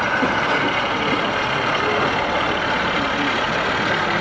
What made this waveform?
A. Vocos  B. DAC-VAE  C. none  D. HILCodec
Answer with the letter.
C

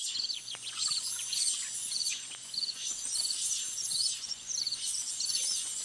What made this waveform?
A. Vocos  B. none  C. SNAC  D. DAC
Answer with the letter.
A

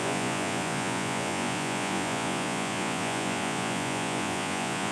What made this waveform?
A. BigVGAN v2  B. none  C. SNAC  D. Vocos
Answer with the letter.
D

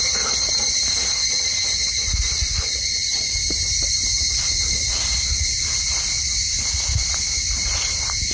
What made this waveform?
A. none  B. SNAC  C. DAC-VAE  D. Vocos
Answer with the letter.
A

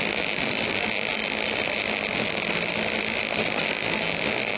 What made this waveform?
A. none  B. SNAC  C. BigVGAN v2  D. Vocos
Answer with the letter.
A